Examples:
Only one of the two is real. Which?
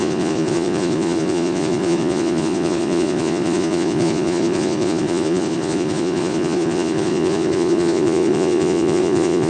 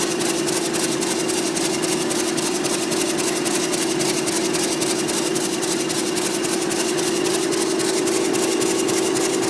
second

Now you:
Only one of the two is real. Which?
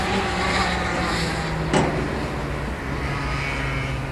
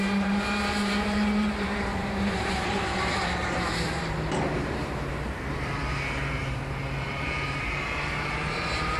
first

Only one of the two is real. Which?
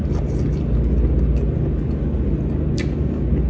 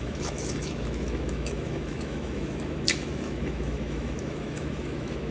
first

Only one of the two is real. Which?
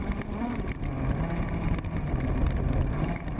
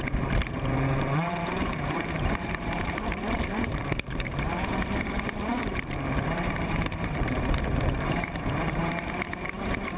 first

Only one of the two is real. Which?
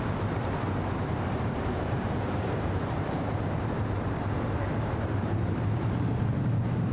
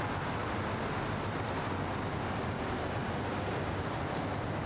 second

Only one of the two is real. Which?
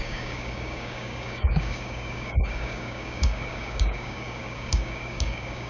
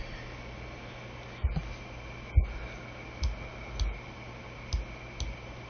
second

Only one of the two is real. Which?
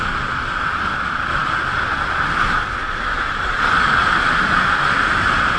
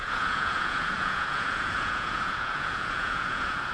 first